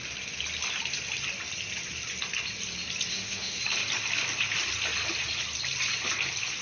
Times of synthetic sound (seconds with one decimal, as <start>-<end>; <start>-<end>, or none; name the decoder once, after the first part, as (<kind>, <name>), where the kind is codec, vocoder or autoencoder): 3.1-3.6 (autoencoder, DAC-VAE)